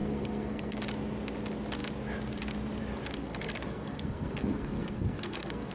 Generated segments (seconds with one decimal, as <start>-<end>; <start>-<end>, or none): 0.0-0.8; 3.2-5.7